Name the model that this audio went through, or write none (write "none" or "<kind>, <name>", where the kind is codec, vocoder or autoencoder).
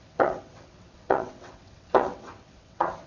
vocoder, WaveNeXt